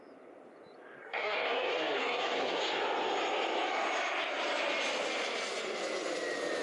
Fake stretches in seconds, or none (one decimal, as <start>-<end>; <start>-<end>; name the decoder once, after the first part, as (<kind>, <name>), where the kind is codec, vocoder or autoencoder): 1.0-2.6 (codec, SNAC)